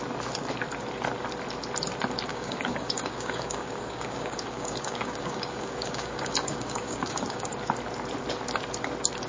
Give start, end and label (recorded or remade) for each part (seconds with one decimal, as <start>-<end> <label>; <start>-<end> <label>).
0.0-2.3 recorded; 2.3-7.5 remade; 7.5-9.3 recorded